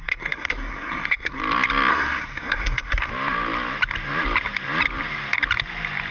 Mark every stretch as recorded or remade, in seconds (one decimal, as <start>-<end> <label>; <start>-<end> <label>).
0.0-1.4 remade; 1.4-1.9 recorded; 1.9-3.1 remade; 3.1-6.1 recorded